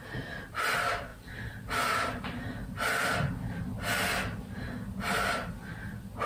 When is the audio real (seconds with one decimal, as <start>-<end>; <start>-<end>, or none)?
0.0-6.3